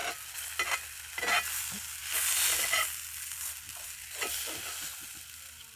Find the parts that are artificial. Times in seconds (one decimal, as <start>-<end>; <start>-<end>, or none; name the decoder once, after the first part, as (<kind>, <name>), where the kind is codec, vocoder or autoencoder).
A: none